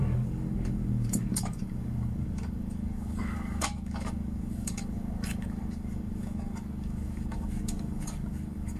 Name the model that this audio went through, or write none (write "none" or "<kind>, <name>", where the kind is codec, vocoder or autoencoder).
codec, DAC